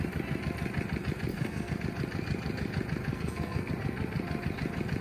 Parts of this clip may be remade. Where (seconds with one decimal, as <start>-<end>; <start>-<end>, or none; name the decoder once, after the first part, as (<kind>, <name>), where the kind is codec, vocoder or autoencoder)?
1.3-1.8 (codec, SNAC); 3.1-3.7